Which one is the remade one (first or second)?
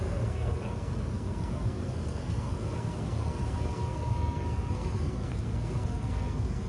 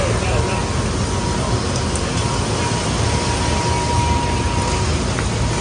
first